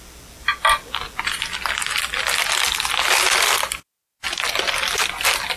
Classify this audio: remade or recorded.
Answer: recorded